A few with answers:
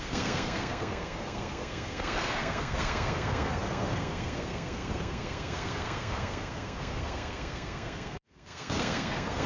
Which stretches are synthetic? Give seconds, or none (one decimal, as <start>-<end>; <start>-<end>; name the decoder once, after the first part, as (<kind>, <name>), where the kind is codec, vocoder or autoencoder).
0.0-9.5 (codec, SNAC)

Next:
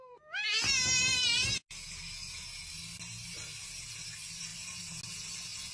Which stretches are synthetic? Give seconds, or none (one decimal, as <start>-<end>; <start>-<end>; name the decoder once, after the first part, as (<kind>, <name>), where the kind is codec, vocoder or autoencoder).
none

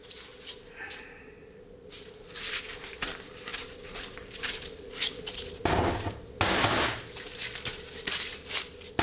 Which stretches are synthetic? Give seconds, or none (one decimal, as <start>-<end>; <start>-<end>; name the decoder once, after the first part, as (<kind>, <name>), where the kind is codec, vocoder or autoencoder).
none

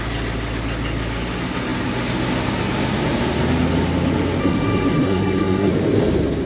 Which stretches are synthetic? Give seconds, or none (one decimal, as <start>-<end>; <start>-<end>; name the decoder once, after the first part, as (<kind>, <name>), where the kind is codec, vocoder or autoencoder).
4.4-5.7 (codec, SNAC)